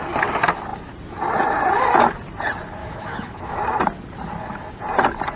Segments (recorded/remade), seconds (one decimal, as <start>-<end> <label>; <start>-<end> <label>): 0.0-2.8 recorded; 2.8-3.6 remade; 3.6-5.4 recorded

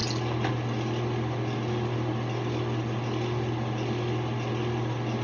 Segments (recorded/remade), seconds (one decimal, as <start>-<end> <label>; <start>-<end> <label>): 0.0-5.2 recorded